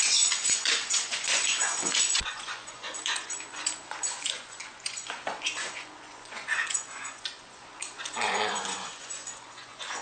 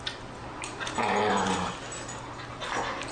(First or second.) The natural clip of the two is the second